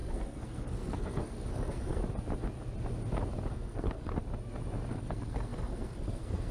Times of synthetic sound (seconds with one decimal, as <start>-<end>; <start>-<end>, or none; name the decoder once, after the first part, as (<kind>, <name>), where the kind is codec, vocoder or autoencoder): 0.0-2.0 (codec, SNAC); 3.5-4.1; 4.9-6.5